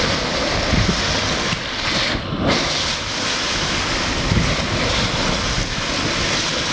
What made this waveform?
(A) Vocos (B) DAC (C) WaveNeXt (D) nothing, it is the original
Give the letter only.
D